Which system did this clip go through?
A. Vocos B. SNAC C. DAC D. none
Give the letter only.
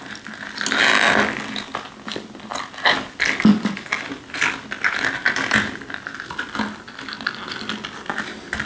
D